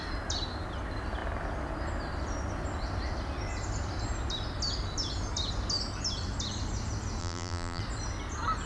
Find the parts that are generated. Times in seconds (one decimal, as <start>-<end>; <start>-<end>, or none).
7.2-7.8